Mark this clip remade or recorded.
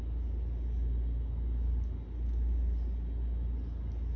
recorded